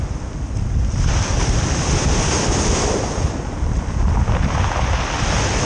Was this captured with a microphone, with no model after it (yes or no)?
yes